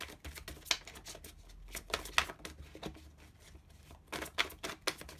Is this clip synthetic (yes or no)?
no